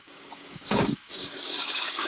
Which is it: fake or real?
fake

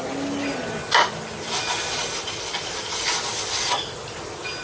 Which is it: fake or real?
real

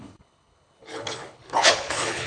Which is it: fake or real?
fake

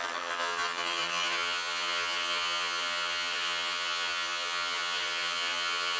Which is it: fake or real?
fake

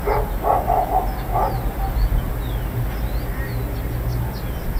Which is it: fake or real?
real